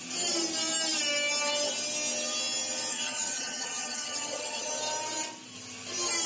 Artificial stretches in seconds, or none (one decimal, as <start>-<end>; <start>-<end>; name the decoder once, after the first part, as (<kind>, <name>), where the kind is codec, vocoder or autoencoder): 2.9-4.7 (vocoder, HiFi-GAN)